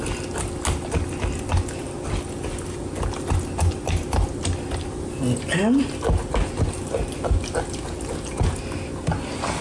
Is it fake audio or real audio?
real